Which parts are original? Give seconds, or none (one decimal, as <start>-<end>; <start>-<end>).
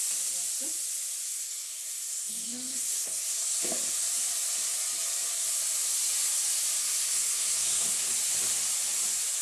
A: 0.0-1.3; 3.6-6.8; 8.1-9.4